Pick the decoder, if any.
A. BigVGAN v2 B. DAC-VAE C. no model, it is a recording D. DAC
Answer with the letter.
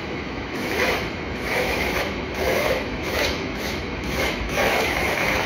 B